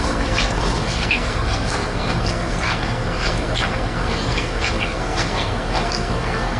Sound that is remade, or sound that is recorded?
remade